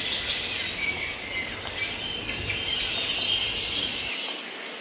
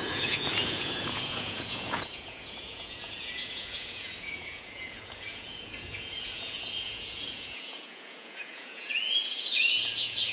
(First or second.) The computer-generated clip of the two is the second